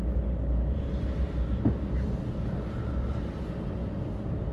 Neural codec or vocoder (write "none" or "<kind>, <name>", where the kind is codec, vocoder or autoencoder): none